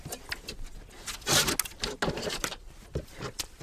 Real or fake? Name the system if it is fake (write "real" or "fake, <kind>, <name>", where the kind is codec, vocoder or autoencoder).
real